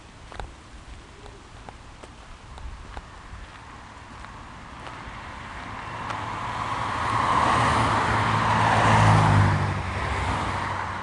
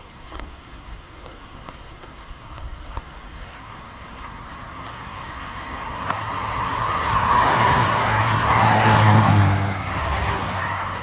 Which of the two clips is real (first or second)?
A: first